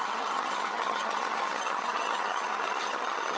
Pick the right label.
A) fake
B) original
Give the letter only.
A